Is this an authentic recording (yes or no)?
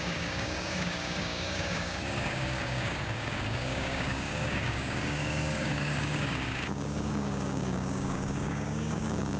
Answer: no